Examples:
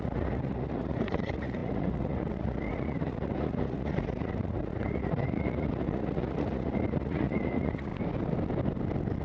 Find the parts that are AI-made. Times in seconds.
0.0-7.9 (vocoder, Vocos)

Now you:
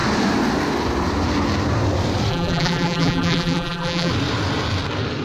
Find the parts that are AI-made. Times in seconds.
2.3-4.1 (vocoder, BigVGAN v2)